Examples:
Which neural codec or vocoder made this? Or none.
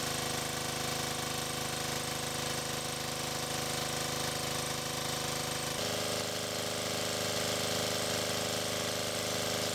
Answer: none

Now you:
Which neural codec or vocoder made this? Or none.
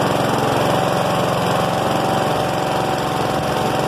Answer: none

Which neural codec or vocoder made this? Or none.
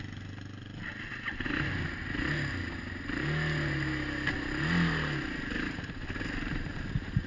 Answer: none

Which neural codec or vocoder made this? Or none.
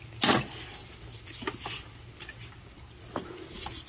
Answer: none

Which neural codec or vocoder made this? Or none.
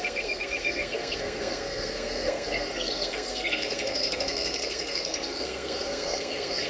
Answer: codec, SNAC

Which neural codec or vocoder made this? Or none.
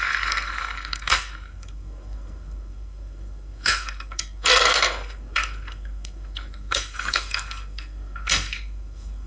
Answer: codec, SNAC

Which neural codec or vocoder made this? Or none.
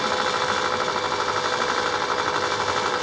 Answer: none